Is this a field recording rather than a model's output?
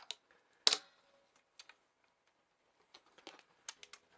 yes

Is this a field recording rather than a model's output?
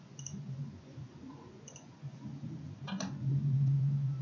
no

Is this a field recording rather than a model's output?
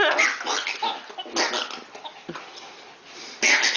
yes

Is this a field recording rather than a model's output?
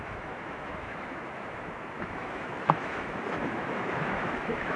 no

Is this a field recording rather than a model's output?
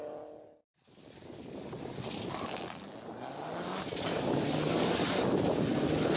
yes